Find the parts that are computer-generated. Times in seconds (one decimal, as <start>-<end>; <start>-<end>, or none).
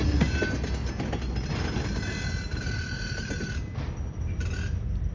none